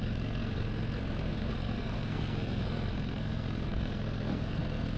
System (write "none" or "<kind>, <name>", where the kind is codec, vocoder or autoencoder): codec, SNAC